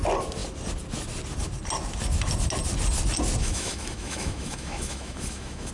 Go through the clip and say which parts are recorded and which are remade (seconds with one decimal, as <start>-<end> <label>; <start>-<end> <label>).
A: 0.0-3.4 recorded; 3.4-5.7 remade